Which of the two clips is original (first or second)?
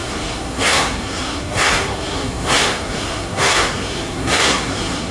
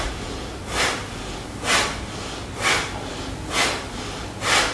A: second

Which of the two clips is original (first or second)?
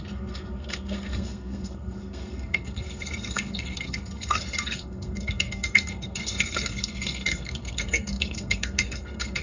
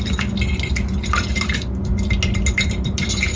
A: second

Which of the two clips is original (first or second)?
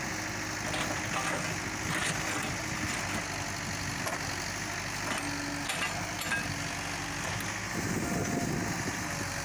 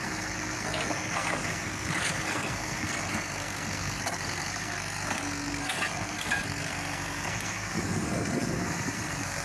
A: first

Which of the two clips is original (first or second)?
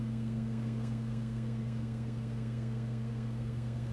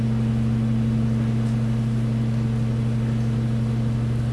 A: second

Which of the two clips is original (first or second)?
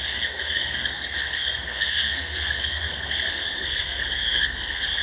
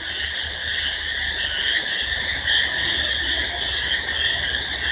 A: second